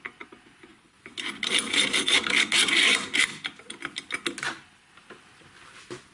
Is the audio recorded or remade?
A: recorded